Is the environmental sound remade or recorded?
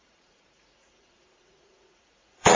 remade